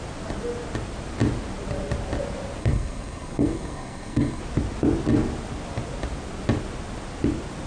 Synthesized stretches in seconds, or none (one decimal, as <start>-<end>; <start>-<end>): 2.6-4.4